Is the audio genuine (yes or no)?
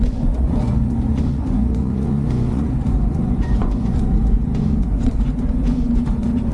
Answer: no